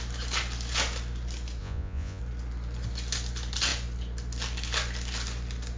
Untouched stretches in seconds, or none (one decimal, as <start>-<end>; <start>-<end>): 0.0-1.6; 2.2-5.8